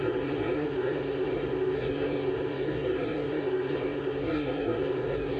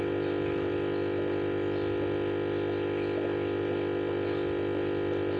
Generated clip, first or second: first